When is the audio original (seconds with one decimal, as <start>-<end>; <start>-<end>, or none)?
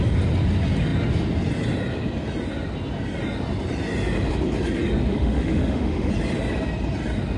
0.0-5.1; 6.1-7.4